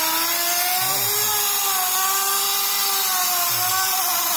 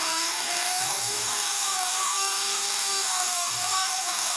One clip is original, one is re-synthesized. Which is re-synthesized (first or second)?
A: second